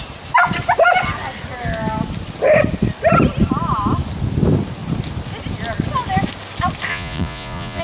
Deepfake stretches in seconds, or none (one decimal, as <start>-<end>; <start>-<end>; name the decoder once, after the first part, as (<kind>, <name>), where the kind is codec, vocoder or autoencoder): 6.9-7.8 (vocoder, Vocos)